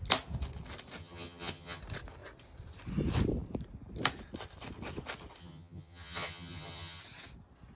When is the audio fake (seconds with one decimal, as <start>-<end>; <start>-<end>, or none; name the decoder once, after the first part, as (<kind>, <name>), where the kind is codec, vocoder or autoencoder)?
1.0-1.8 (vocoder, HiFi-GAN); 5.4-7.0